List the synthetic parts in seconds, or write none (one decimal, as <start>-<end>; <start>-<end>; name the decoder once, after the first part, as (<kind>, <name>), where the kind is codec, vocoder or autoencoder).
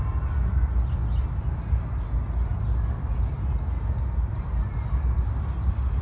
none